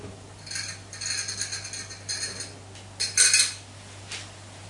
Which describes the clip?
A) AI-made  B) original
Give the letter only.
B